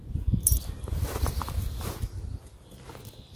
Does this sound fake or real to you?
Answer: real